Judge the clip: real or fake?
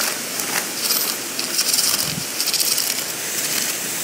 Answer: real